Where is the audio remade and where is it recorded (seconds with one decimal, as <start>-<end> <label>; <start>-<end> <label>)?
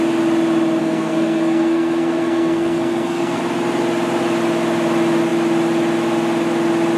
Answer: 0.0-0.8 recorded; 0.8-3.4 remade; 3.4-7.0 recorded